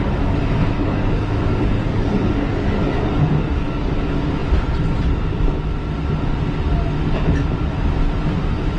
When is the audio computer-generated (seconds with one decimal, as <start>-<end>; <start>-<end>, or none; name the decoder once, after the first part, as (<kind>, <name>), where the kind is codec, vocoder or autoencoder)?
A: 0.6-3.9 (codec, DAC)